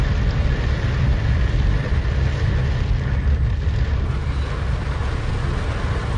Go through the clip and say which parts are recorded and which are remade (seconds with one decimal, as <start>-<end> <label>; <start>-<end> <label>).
0.0-4.2 recorded; 4.2-5.3 remade; 5.3-6.2 recorded